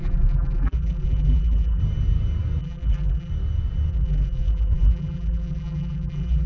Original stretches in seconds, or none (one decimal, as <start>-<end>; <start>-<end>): 1.8-2.6; 3.3-3.9